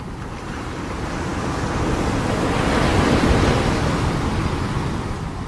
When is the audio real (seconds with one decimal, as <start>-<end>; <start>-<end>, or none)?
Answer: 0.0-5.5